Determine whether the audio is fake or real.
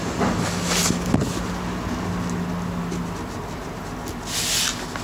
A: real